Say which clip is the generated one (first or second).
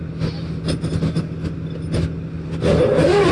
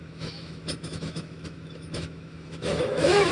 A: second